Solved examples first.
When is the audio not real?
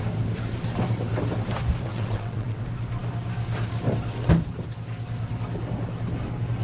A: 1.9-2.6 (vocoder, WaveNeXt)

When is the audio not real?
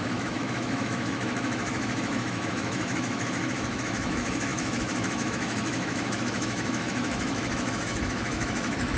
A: 0.0-9.0 (autoencoder, DAC-VAE)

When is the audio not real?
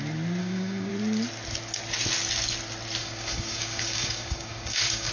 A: 0.4-0.9 (codec, DAC); 3.0-5.1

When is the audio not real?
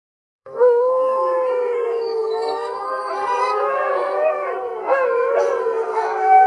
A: 0.0-6.5 (codec, SNAC)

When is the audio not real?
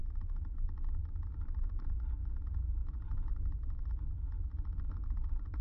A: none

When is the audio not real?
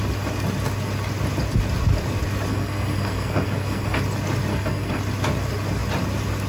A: 2.5-4.0 (codec, SNAC); 4.5-5.0